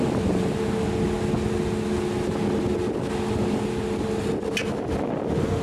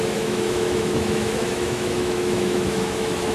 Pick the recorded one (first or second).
first